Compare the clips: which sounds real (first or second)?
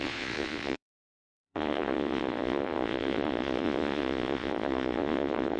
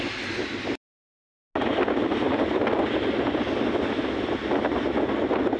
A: second